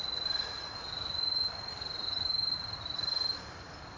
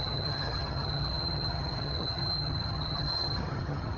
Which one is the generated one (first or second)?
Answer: second